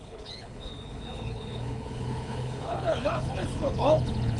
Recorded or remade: remade